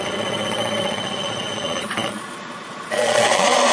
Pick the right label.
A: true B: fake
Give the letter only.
B